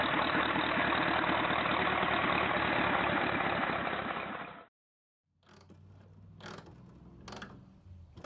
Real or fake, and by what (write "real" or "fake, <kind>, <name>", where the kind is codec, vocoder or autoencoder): real